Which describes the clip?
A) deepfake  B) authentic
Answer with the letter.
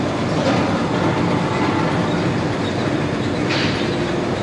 B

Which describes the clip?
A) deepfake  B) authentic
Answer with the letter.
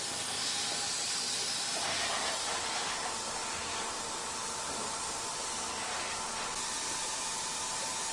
B